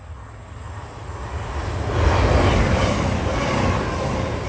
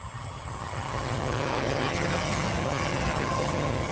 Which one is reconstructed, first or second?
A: second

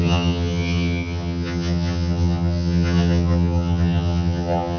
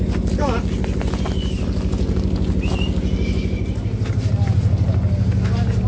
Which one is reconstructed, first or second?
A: first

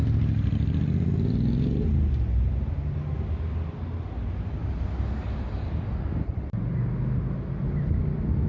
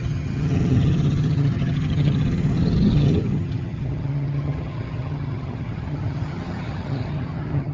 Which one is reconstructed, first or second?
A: second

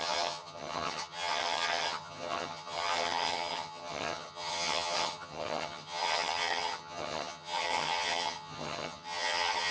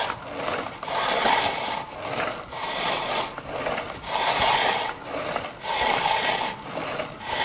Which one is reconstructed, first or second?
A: first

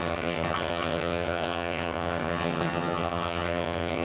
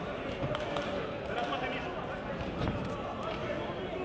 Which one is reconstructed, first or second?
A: first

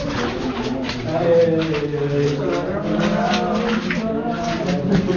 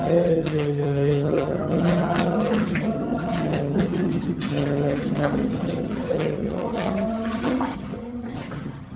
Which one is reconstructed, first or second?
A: second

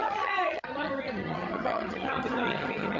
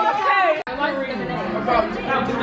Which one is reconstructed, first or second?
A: first